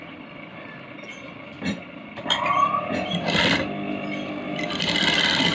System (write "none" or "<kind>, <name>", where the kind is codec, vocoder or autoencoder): none